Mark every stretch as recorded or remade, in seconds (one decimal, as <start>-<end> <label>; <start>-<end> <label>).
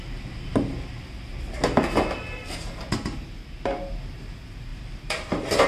0.0-4.7 recorded; 4.7-5.7 remade